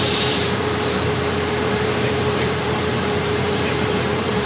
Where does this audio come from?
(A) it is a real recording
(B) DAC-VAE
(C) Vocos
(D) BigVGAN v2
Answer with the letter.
D